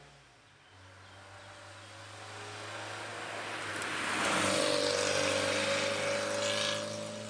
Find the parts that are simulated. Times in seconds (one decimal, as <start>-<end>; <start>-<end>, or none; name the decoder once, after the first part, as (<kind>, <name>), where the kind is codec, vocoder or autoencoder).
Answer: none